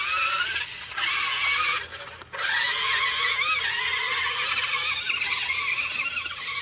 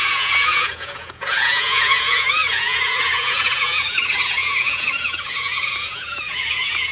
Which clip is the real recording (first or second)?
first